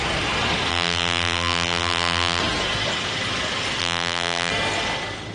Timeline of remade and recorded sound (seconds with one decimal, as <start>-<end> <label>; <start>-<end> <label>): 0.0-0.7 recorded; 0.7-2.4 remade; 2.4-3.8 recorded; 3.8-4.5 remade; 4.5-5.3 recorded